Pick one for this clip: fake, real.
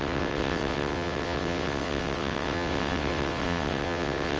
fake